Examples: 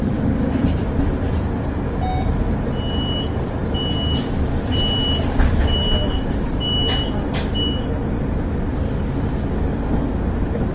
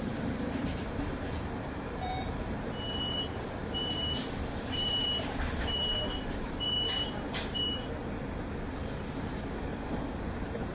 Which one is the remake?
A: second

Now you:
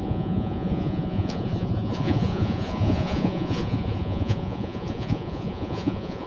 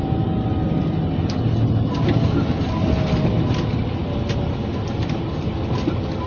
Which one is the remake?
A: first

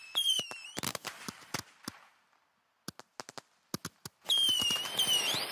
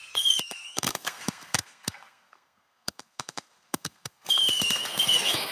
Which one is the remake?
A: second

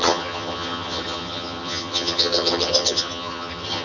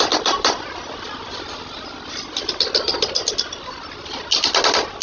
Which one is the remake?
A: first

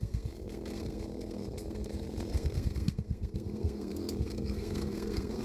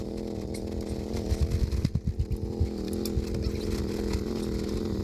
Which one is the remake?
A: first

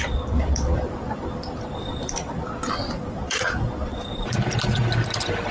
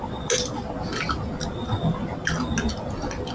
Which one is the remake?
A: first